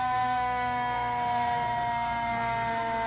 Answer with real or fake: fake